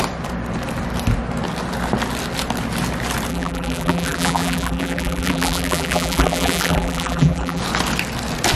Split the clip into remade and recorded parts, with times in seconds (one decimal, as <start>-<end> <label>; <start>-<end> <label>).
0.0-3.3 recorded; 3.3-7.6 remade; 7.6-8.6 recorded